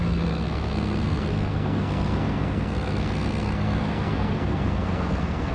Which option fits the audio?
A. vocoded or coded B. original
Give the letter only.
A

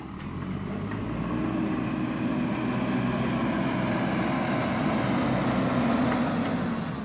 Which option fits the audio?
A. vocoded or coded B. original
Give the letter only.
B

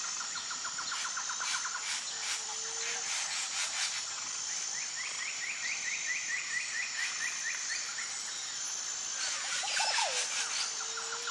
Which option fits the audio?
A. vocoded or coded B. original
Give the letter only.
B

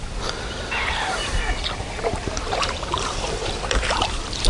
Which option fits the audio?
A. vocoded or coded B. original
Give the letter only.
B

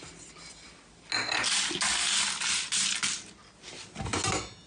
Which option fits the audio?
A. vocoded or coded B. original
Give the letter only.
B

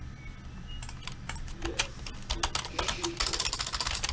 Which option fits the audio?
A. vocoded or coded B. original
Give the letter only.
B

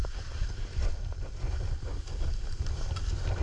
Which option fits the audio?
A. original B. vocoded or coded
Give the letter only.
A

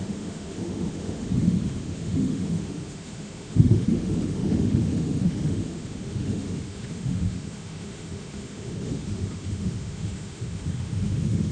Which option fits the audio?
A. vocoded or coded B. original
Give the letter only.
A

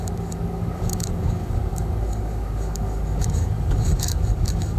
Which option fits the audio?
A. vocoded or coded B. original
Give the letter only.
A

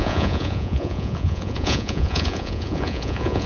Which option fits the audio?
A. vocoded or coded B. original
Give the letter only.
A